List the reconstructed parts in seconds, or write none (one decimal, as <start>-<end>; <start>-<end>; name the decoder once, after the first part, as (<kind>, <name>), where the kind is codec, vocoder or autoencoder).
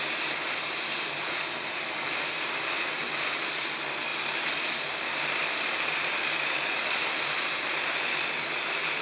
0.0-4.1 (vocoder, BigVGAN v2); 5.2-9.0